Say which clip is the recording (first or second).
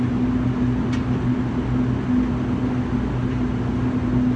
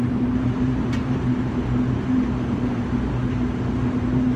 first